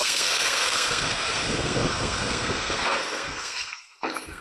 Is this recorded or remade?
remade